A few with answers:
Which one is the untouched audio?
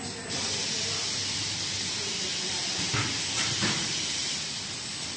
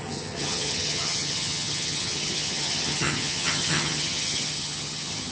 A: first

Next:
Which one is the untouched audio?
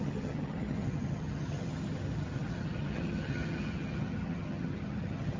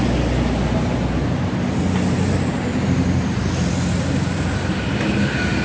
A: second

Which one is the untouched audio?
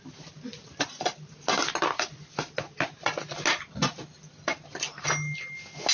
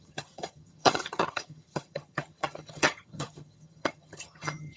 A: first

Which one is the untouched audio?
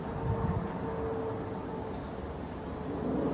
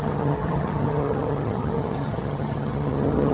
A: first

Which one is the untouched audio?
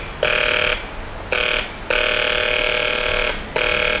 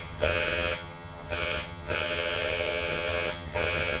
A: first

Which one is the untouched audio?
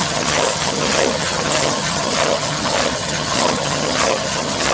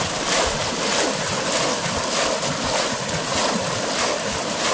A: second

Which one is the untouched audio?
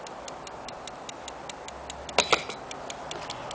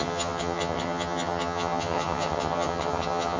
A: first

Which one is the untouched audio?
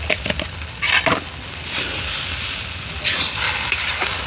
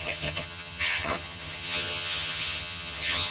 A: first